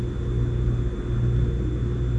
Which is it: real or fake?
real